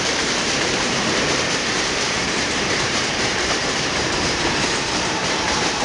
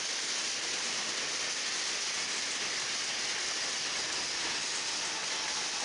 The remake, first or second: first